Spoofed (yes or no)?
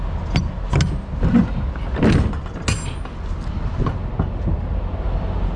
no